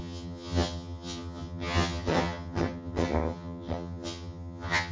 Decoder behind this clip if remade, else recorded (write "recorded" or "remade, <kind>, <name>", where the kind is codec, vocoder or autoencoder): remade, vocoder, HiFi-GAN